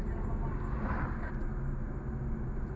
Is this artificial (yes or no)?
no